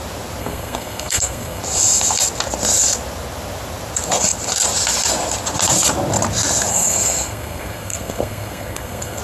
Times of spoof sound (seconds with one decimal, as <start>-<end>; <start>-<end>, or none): 0.4-1.6; 6.7-9.2